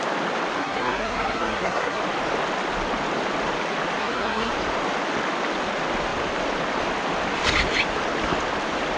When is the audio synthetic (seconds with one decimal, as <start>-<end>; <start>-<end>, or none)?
0.6-2.0; 4.0-4.5